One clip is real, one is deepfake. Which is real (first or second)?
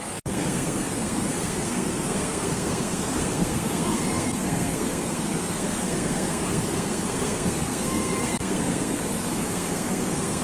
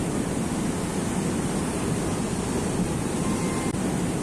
second